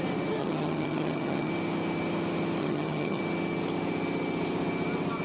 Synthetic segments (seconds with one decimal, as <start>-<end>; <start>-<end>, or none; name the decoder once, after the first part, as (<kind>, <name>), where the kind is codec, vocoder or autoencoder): 0.4-1.5 (vocoder, HiFi-GAN); 2.6-3.2